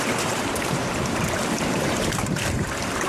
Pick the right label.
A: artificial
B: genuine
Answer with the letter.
A